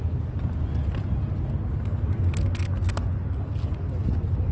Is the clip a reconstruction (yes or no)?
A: no